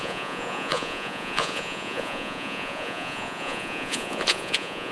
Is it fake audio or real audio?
fake